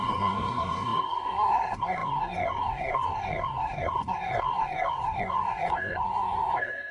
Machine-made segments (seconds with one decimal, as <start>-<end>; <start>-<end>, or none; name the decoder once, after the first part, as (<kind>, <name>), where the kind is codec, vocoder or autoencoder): 0.0-6.9 (codec, SNAC)

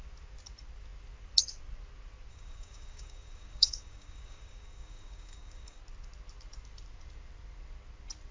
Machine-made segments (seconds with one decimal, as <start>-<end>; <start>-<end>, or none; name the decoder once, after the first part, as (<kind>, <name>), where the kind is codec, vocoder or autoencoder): 2.3-5.8 (codec, DAC)

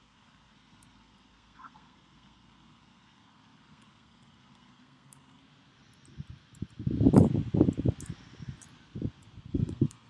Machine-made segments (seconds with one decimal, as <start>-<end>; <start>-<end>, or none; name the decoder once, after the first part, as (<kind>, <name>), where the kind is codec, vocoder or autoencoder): 0.0-5.4 (codec, SNAC); 9.5-10.1

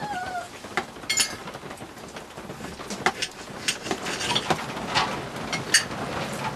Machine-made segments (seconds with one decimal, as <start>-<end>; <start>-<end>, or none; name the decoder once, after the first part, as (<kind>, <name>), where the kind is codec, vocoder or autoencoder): none